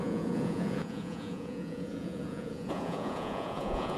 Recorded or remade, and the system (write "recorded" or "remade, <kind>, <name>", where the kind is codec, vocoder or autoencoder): remade, vocoder, Vocos